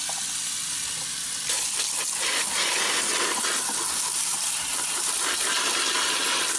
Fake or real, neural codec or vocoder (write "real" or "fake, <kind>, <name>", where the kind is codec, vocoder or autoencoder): real